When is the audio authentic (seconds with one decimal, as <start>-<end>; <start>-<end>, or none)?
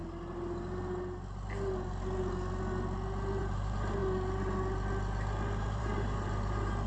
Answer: 0.0-3.4; 4.0-5.6